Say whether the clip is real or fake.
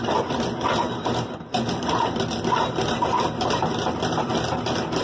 fake